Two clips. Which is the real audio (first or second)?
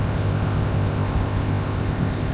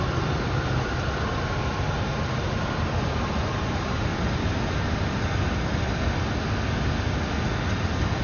second